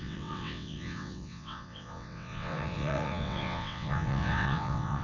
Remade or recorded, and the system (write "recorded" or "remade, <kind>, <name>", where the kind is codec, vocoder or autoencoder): remade, vocoder, WaveNeXt